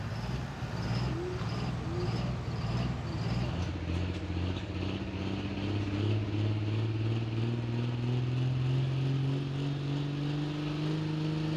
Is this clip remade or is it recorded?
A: recorded